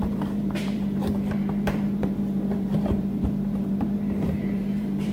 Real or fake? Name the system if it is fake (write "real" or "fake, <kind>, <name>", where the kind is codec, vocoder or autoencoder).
fake, vocoder, BigVGAN v2